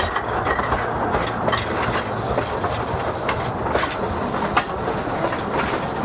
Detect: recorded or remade recorded